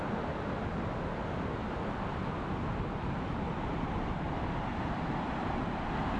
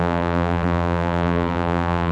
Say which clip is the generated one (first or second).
second